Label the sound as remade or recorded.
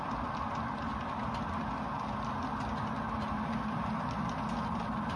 recorded